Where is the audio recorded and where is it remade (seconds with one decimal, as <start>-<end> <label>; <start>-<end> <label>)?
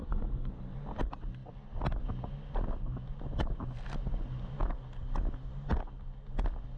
0.0-0.5 remade; 0.5-6.8 recorded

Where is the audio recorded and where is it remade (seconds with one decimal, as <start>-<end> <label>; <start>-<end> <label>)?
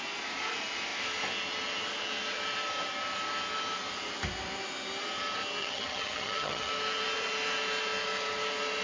0.0-5.6 recorded; 5.6-6.7 remade; 6.7-8.8 recorded